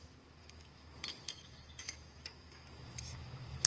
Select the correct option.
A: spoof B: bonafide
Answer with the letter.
A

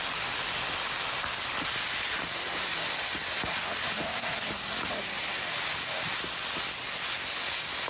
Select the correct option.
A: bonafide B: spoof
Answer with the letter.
A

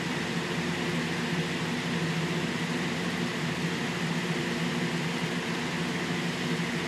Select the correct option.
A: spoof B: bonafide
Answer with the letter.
B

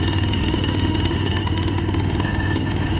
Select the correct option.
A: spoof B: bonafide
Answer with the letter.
A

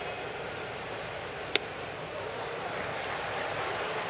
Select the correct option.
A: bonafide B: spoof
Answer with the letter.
A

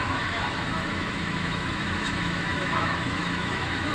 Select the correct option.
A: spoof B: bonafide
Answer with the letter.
A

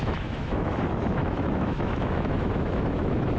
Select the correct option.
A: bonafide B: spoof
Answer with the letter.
B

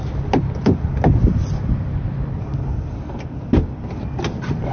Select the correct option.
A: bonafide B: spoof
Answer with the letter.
A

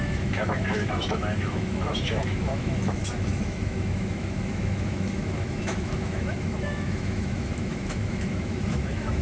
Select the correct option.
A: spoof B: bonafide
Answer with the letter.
A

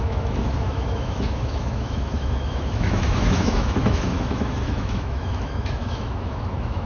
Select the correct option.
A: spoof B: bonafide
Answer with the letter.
A